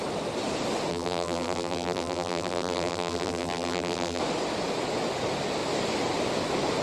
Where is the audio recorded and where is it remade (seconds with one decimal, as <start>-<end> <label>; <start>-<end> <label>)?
0.0-0.9 recorded; 0.9-4.2 remade; 4.2-6.8 recorded